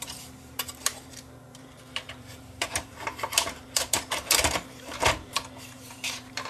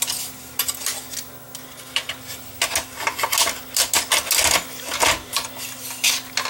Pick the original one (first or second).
second